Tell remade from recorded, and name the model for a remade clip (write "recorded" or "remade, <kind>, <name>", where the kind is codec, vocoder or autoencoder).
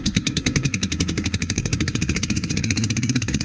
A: remade, codec, SNAC